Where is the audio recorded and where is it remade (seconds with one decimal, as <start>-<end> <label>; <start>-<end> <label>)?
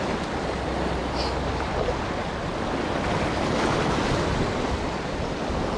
0.0-5.8 recorded